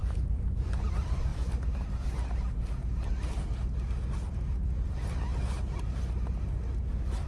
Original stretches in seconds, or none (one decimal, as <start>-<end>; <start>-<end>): 0.0-7.3